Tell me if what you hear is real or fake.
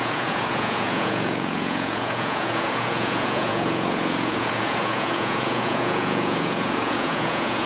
fake